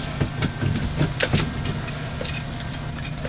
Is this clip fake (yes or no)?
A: no